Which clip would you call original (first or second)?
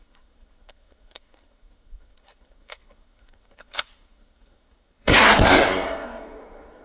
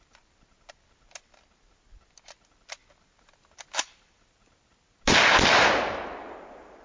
second